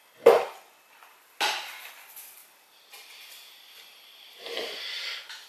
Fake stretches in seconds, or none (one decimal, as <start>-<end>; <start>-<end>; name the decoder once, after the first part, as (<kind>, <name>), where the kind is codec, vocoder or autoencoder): none